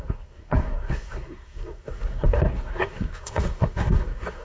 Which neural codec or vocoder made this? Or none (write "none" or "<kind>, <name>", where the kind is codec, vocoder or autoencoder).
codec, SNAC